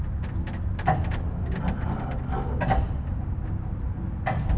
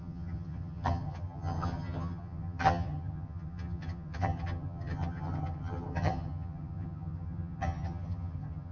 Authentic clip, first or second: first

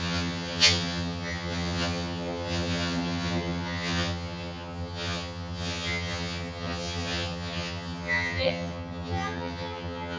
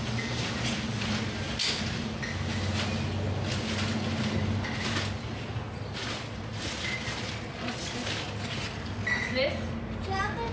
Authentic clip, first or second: second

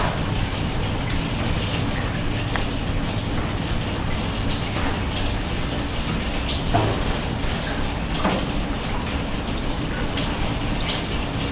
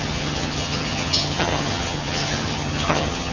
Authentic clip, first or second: first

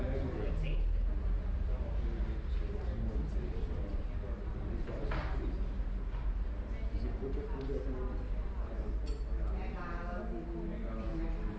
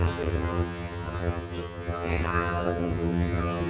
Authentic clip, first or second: first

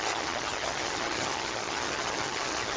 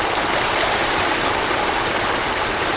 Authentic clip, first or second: second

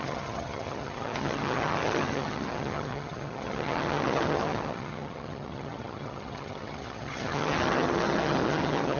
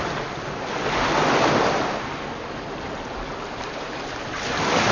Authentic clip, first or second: second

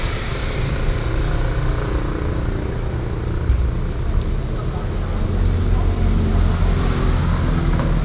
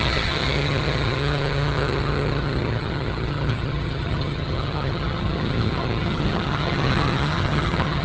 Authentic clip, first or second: first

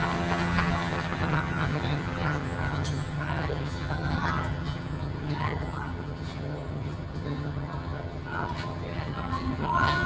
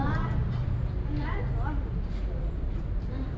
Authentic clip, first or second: second